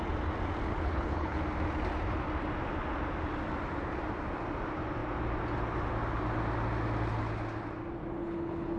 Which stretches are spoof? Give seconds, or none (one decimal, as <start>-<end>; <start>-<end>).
0.7-1.4; 8.2-8.8